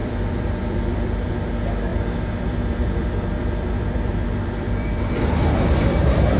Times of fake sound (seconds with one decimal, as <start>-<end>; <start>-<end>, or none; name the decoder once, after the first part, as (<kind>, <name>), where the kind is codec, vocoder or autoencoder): 0.0-1.3 (vocoder, BigVGAN v2); 1.9-5.2